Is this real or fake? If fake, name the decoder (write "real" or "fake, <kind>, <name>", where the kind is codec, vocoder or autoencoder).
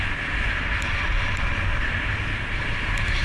real